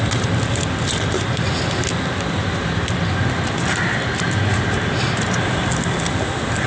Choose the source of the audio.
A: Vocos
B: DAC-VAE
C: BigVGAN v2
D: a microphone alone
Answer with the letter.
D